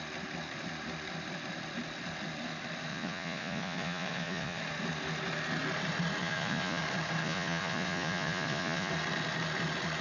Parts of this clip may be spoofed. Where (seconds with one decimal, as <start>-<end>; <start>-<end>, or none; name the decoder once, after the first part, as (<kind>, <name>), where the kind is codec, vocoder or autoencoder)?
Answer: 2.9-4.6 (vocoder, Vocos); 6.2-6.8; 7.2-8.9